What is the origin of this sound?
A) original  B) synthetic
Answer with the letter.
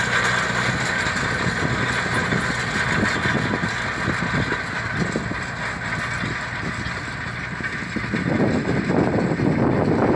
A